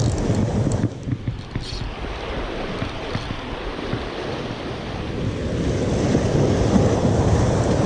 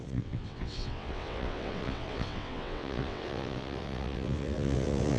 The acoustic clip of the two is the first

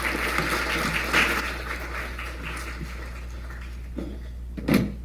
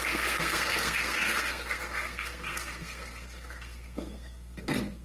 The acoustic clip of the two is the first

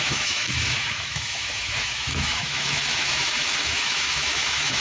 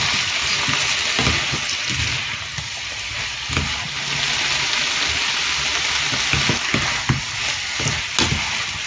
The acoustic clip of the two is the second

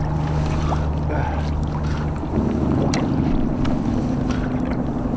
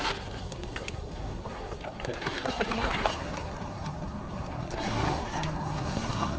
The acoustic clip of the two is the first